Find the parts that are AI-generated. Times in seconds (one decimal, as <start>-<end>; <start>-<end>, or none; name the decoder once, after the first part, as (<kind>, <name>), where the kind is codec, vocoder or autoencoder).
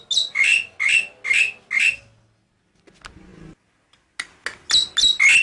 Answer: none